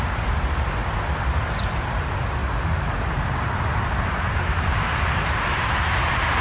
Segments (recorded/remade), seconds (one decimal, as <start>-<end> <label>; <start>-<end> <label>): 0.0-0.8 remade; 0.8-1.6 recorded; 1.6-6.4 remade